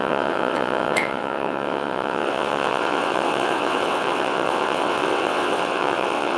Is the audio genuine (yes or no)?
no